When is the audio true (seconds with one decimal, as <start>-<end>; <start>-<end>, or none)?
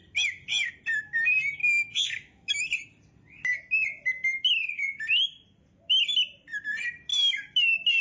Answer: 0.0-1.6; 2.6-7.1; 7.6-8.0